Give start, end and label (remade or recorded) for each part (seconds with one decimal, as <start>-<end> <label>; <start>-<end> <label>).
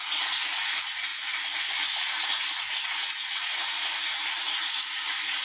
0.0-5.4 recorded